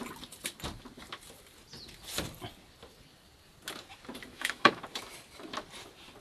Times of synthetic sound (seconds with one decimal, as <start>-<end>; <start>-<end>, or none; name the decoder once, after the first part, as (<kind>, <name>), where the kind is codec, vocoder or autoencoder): 4.3-4.8 (autoencoder, DAC-VAE)